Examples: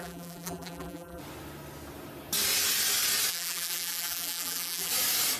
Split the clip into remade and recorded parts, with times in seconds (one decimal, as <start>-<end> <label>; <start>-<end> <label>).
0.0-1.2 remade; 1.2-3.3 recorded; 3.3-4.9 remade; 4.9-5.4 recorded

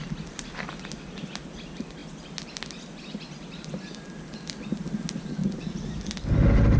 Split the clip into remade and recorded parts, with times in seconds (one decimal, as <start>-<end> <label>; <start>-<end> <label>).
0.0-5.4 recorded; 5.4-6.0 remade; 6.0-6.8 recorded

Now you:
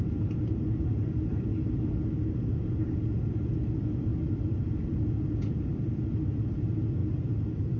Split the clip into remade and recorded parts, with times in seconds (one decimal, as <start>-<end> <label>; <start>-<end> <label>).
0.0-4.1 recorded; 4.1-6.2 remade; 6.2-7.0 recorded; 7.0-7.8 remade